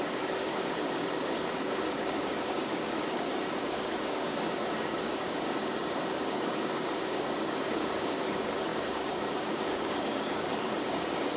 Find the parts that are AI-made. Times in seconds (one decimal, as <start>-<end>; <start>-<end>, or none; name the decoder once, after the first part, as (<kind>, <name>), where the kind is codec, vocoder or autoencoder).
0.0-11.4 (codec, DAC)